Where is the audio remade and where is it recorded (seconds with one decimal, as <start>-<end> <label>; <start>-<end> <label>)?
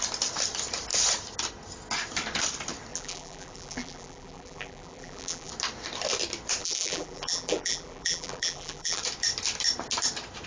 0.0-2.9 recorded; 2.9-5.5 remade; 5.5-6.6 recorded; 6.6-9.0 remade; 9.0-10.5 recorded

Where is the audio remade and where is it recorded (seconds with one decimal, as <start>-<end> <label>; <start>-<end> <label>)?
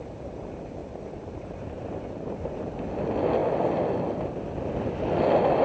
0.0-0.8 recorded; 0.8-2.5 remade; 2.5-5.6 recorded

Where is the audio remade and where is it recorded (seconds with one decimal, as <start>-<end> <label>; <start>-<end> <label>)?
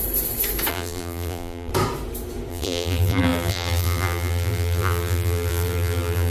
0.0-0.7 recorded; 0.7-1.7 remade; 1.7-2.5 recorded; 2.5-6.3 remade